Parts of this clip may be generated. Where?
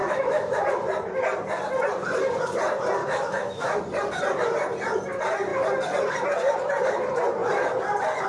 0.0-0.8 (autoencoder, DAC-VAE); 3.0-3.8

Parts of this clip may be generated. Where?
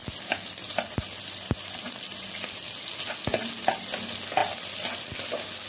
none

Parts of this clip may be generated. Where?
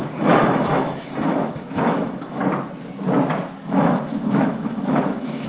0.0-2.4 (autoencoder, DAC-VAE); 3.7-5.5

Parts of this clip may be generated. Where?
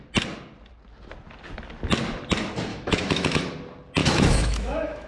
2.7-3.4 (autoencoder, DAC-VAE); 4.0-5.1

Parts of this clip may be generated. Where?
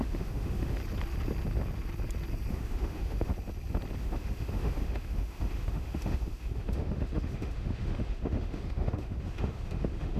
0.0-0.8 (autoencoder, DAC-VAE); 2.5-3.3; 4.0-10.2